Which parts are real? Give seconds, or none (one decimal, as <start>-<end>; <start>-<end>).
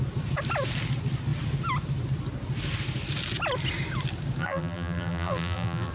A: 0.0-4.4